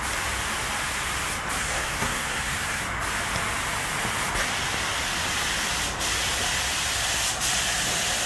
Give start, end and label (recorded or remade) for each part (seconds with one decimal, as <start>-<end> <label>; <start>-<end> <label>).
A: 0.0-1.6 recorded; 1.6-2.8 remade; 2.8-8.3 recorded